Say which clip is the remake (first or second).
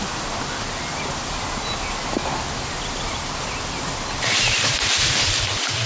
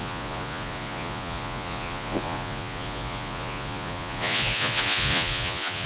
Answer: second